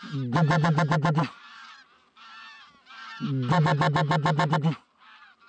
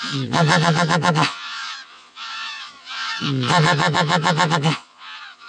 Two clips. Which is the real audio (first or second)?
first